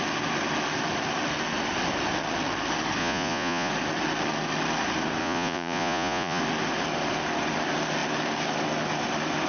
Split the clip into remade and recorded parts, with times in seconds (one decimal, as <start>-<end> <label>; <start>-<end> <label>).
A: 0.0-3.0 recorded; 3.0-3.7 remade; 3.7-5.2 recorded; 5.2-6.4 remade; 6.4-9.5 recorded